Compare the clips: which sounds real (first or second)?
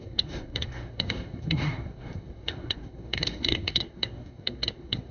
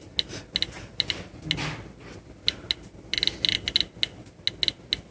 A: second